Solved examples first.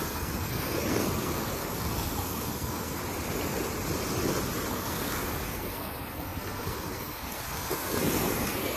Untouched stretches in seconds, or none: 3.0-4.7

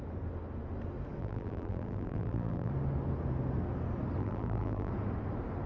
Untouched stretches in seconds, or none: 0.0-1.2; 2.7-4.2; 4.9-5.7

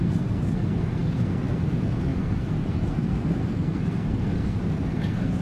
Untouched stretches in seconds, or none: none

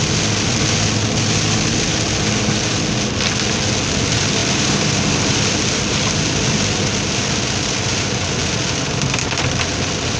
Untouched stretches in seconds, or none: 0.0-4.4; 5.0-8.4

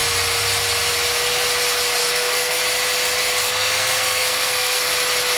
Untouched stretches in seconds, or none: 0.0-2.0; 2.6-3.4; 4.9-5.4

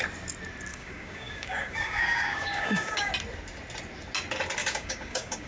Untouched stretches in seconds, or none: 0.0-0.7; 3.1-4.6

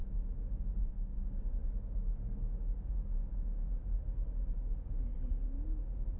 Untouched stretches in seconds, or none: 0.0-0.9